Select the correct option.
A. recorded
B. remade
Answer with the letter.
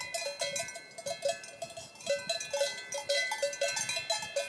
A